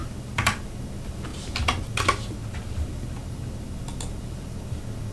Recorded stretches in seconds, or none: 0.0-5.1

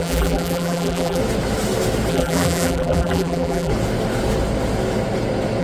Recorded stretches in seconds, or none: 1.2-2.1; 3.7-5.6

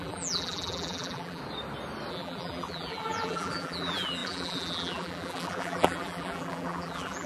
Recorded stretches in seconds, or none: 1.4-2.1

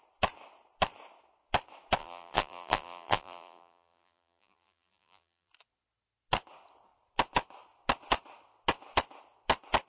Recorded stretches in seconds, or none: 0.0-2.0; 5.5-9.9